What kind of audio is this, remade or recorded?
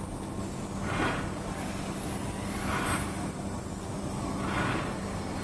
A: recorded